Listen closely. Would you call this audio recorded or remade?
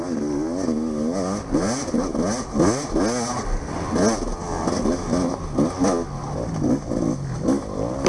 recorded